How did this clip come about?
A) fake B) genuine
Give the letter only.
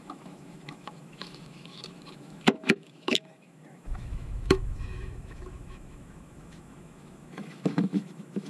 A